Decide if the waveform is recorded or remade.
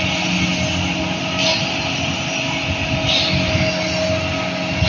recorded